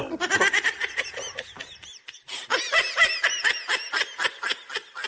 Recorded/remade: recorded